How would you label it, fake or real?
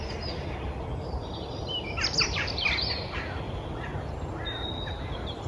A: real